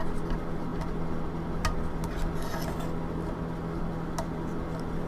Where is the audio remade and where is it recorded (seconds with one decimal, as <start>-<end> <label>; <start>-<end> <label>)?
0.0-5.1 recorded